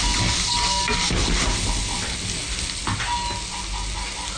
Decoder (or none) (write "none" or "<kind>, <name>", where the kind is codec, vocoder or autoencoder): none